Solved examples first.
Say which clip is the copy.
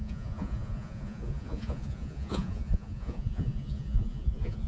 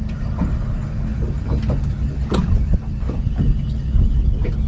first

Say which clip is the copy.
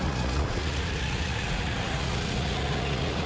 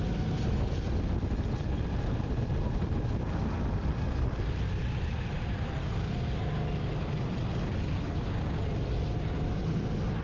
first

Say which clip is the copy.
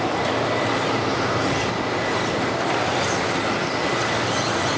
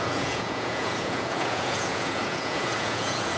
second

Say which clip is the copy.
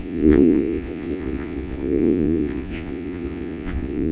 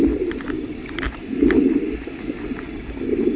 first